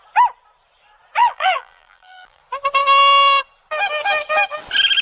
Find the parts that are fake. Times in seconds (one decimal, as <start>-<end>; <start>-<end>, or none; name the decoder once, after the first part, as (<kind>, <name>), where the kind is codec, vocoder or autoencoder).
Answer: 1.2-2.4 (vocoder, BigVGAN v2)